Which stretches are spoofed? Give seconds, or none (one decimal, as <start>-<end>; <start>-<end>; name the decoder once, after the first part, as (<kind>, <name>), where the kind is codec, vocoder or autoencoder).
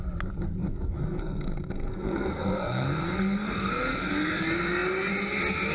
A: 0.7-4.1 (codec, SNAC)